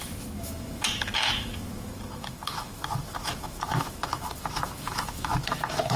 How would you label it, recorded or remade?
remade